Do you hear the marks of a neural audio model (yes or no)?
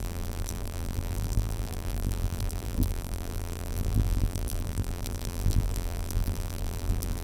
yes